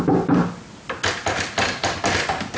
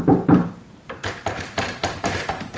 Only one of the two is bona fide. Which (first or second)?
first